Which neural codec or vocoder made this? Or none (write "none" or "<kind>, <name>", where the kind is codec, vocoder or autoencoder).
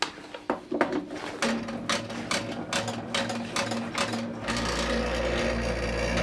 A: none